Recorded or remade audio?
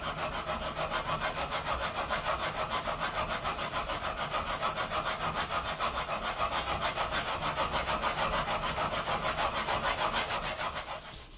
recorded